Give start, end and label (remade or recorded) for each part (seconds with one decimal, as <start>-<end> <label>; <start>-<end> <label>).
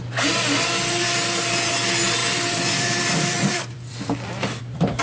0.0-2.2 recorded; 2.2-4.6 remade; 4.6-5.0 recorded